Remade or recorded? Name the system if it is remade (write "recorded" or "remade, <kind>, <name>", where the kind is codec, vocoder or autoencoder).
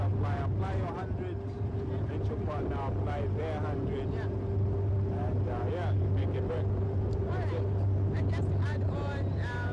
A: recorded